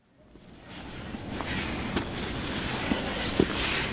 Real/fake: real